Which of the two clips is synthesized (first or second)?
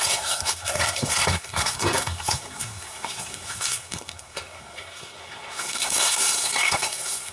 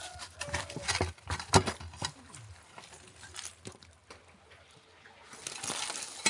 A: first